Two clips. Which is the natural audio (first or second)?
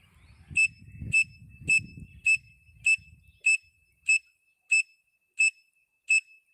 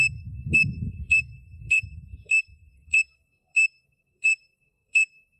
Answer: first